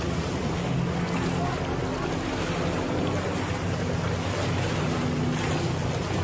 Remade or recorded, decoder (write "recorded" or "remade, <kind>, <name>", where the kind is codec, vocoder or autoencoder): recorded